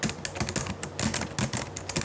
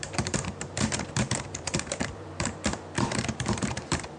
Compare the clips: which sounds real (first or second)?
first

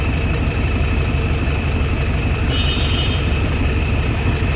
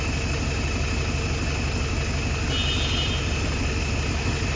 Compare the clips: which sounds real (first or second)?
second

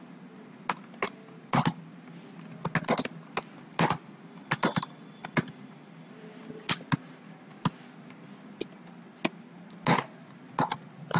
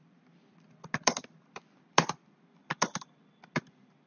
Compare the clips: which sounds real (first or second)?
first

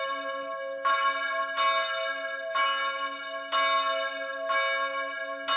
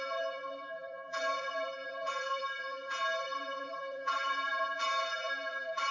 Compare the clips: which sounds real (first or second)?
first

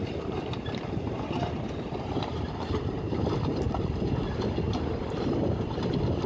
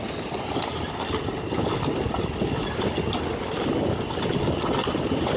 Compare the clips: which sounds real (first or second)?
second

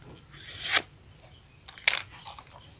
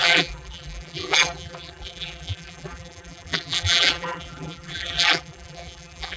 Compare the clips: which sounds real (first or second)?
first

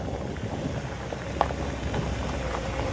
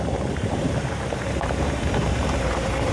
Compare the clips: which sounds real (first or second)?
first